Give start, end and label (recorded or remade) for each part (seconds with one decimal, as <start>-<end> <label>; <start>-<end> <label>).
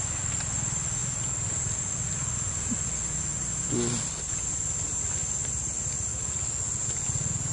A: 0.0-7.5 recorded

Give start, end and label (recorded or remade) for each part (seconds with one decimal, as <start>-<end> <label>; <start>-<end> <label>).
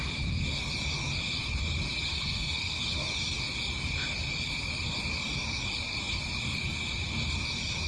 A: 0.0-2.1 recorded; 2.1-2.8 remade; 2.8-7.9 recorded